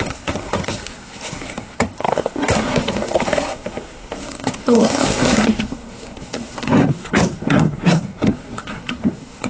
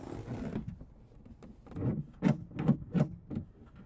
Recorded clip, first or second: second